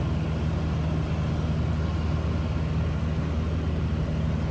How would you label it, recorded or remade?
recorded